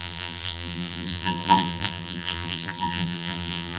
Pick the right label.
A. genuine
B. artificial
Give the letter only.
B